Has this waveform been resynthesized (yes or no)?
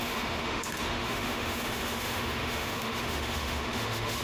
yes